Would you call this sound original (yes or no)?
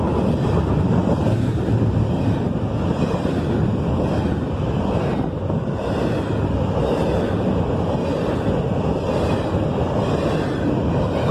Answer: yes